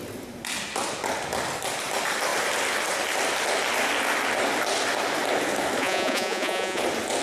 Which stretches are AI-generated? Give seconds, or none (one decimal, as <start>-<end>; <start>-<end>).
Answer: 5.8-6.8

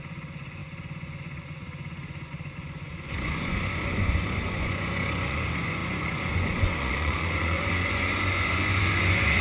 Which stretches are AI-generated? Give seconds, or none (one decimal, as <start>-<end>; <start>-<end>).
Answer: 0.0-9.4

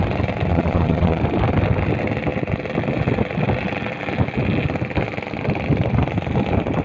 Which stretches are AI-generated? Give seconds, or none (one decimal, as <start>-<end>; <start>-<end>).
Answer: 0.5-1.2

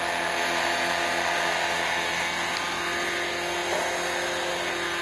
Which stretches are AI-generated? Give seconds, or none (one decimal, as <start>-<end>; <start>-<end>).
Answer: none